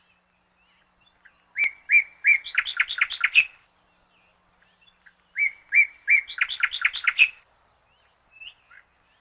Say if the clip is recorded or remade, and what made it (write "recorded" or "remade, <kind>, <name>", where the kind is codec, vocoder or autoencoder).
recorded